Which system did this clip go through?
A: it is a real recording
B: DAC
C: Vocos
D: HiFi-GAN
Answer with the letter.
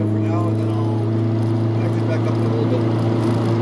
A